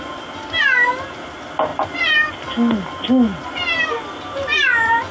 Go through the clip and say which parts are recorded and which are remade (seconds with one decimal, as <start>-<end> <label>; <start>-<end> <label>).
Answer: 0.0-5.1 recorded